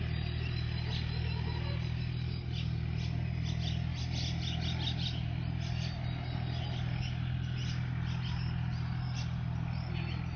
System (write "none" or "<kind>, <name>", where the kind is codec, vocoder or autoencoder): none